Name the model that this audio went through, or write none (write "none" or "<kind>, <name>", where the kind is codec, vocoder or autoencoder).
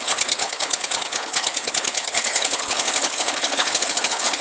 codec, HILCodec